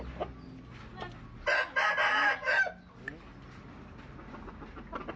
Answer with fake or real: real